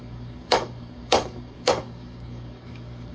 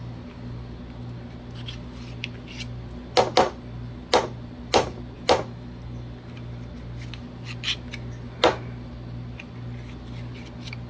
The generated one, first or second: first